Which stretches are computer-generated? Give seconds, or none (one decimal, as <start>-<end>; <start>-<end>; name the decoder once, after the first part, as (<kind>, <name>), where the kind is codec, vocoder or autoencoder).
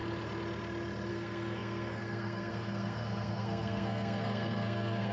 1.1-5.1 (codec, SNAC)